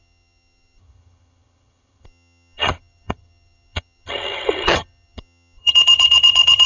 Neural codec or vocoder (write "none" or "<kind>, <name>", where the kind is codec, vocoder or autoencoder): vocoder, HiFi-GAN